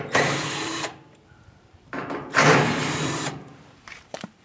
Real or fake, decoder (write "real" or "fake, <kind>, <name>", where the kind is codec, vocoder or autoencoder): fake, vocoder, BigVGAN v2